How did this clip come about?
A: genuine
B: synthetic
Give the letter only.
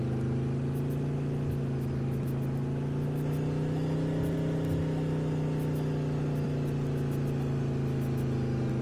A